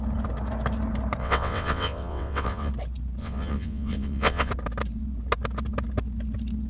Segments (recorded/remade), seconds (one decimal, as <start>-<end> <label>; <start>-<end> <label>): 0.0-1.2 recorded; 1.2-2.7 remade; 2.7-3.2 recorded; 3.2-4.5 remade; 4.5-6.7 recorded